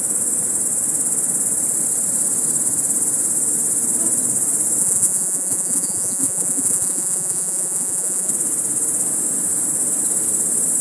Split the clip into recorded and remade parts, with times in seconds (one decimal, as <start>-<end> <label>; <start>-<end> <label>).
0.0-4.8 recorded; 4.8-8.3 remade; 8.3-10.8 recorded